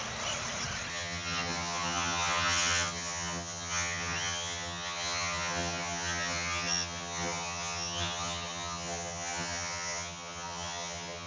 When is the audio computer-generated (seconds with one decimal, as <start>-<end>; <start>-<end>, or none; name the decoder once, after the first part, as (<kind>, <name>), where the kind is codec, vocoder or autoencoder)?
0.9-11.3 (vocoder, HiFi-GAN)